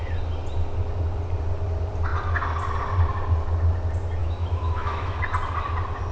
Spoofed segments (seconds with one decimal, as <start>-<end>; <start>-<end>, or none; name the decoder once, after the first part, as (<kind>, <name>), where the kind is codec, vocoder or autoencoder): 4.2-5.2 (autoencoder, DAC-VAE)